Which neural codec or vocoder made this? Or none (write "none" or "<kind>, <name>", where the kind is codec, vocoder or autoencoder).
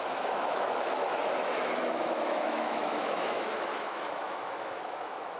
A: autoencoder, DAC-VAE